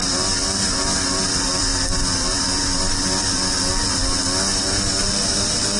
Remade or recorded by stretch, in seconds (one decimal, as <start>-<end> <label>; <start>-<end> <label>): 0.0-4.0 remade; 4.0-5.0 recorded; 5.0-5.8 remade